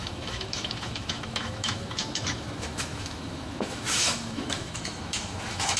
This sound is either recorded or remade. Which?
remade